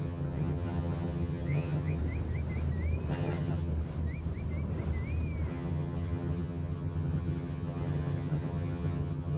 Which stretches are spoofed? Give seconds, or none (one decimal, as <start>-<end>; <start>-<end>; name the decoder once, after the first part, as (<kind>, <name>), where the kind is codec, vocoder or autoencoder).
0.0-2.0 (vocoder, HiFi-GAN); 3.1-3.7; 5.5-9.4